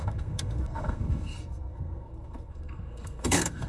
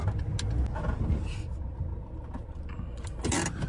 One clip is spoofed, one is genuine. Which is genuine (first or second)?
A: second